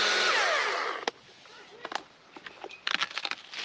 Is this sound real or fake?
real